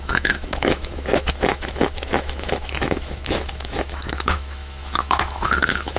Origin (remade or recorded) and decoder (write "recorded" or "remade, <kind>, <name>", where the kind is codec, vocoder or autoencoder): remade, autoencoder, DAC-VAE